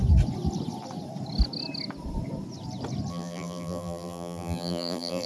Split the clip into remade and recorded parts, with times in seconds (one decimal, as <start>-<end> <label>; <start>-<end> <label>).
0.0-3.1 recorded; 3.1-5.3 remade